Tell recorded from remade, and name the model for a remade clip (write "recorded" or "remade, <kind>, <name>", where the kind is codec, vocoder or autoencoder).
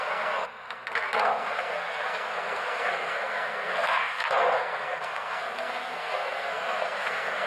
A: remade, codec, SNAC